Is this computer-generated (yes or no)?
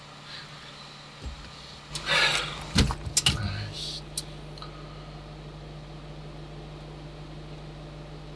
no